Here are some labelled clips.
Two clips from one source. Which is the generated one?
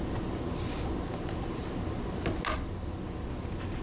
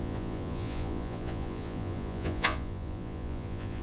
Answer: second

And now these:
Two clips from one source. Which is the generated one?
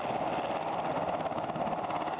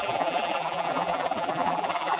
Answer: second